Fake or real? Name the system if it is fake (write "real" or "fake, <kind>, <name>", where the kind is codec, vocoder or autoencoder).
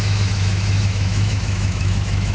fake, autoencoder, DAC-VAE